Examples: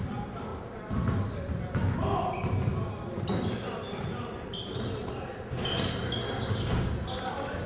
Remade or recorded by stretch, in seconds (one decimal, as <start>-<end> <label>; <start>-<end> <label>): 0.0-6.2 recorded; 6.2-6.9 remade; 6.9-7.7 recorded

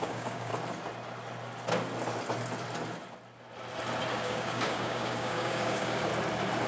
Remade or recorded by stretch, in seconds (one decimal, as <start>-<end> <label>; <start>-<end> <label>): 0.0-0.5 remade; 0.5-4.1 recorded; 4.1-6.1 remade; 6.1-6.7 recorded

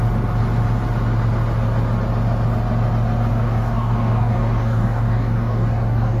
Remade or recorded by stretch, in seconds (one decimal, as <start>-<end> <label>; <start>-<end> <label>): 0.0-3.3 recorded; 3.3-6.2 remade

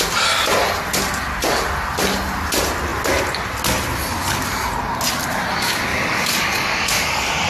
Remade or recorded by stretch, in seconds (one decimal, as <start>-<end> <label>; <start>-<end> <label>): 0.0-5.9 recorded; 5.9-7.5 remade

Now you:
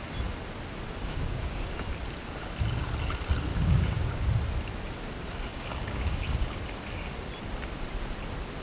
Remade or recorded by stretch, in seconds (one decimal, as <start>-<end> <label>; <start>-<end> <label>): 0.0-1.0 recorded; 1.0-1.7 remade; 1.7-3.5 recorded; 3.5-4.3 remade; 4.3-5.5 recorded; 5.5-6.6 remade; 6.6-8.6 recorded